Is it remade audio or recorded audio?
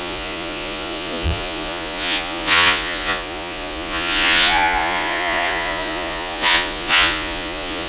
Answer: remade